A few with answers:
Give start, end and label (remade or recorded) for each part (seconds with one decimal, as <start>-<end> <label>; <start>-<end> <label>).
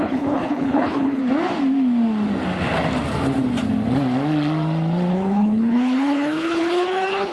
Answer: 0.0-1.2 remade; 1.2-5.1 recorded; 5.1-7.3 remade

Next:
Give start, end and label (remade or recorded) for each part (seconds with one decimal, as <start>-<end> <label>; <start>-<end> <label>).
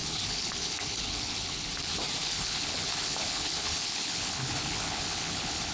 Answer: 0.0-1.7 remade; 1.7-2.2 recorded; 2.2-5.7 remade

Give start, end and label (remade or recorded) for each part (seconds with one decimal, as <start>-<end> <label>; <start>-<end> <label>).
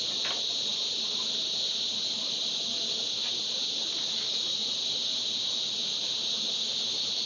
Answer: 0.0-7.3 recorded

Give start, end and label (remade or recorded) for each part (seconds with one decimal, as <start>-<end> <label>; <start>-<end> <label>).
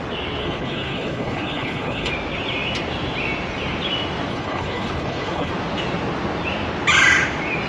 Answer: 0.0-0.4 recorded; 0.4-2.1 remade; 2.1-4.3 recorded; 4.3-5.5 remade; 5.5-7.7 recorded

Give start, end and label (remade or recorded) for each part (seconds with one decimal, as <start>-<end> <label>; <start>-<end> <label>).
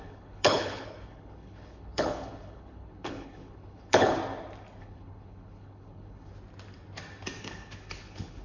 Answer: 0.0-4.2 remade; 4.2-4.8 recorded; 4.8-6.3 remade; 6.3-7.4 recorded; 7.4-8.4 remade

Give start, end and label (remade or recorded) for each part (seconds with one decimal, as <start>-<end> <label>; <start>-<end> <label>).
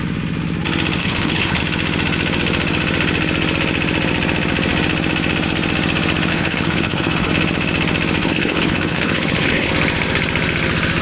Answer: 0.0-1.0 recorded; 1.0-1.6 remade; 1.6-6.3 recorded; 6.3-7.3 remade; 7.3-8.2 recorded; 8.2-9.7 remade; 9.7-11.0 recorded